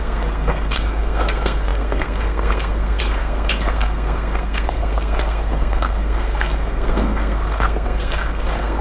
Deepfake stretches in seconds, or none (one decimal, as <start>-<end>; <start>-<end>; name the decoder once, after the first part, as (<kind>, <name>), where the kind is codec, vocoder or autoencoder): 0.0-8.8 (codec, SNAC)